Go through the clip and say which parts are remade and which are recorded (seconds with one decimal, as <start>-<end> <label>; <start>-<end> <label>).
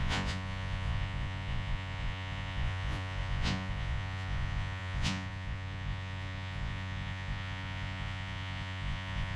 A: 0.0-9.4 remade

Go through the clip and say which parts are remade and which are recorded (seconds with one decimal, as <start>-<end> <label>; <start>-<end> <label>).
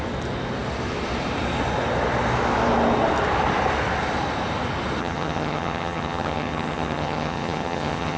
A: 0.0-5.0 recorded; 5.0-8.2 remade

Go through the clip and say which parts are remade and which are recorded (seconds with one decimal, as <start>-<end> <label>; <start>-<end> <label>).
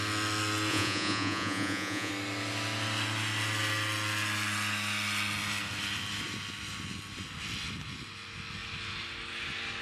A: 0.0-0.7 recorded; 0.7-2.1 remade; 2.1-9.8 recorded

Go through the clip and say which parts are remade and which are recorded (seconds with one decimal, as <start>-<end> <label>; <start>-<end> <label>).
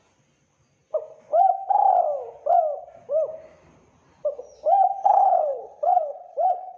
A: 0.0-5.0 recorded; 5.0-6.8 remade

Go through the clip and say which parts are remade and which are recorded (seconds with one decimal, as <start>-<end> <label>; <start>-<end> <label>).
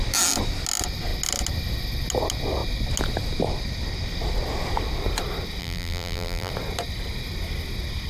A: 0.0-5.6 recorded; 5.6-6.5 remade; 6.5-8.1 recorded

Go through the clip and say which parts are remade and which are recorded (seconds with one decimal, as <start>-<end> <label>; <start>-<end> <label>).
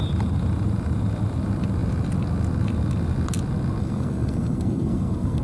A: 0.0-3.8 recorded; 3.8-5.4 remade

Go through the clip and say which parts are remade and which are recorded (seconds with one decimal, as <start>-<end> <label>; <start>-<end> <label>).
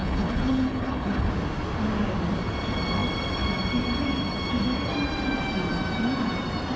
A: 0.0-1.3 remade; 1.3-6.8 recorded